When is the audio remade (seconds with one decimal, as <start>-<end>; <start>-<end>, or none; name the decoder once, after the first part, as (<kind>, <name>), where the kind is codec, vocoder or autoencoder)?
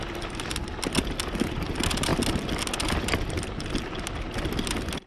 none